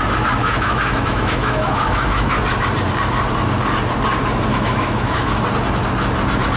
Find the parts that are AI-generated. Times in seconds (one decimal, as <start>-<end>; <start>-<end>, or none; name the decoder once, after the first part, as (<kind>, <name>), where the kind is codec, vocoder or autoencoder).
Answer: 0.4-2.4 (autoencoder, DAC-VAE); 4.5-5.4